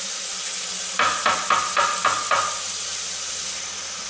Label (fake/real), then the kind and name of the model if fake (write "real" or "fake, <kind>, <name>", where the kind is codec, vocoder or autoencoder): fake, vocoder, BigVGAN v2